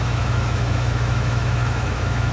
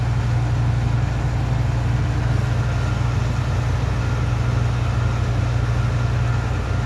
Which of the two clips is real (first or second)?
second